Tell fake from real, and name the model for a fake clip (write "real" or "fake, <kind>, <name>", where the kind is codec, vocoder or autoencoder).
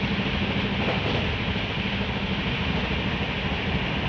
real